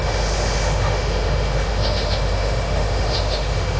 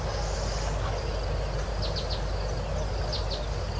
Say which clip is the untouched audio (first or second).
second